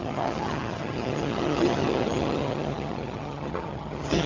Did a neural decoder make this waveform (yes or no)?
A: yes